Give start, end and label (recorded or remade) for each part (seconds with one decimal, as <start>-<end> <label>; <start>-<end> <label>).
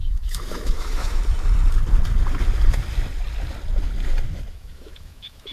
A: 0.0-1.2 remade; 1.2-4.5 recorded; 4.5-5.5 remade